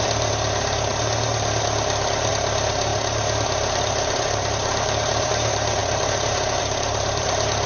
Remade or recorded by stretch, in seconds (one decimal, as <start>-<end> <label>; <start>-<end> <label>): 0.0-0.9 remade; 0.9-2.3 recorded; 2.3-7.7 remade